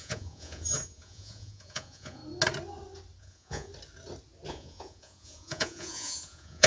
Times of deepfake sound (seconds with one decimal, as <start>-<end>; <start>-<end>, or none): 0.0-2.2; 3.2-3.7; 4.5-6.7